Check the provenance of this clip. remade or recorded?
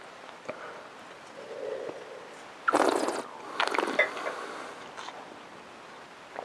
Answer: recorded